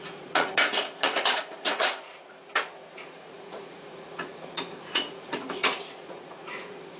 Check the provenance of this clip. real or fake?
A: fake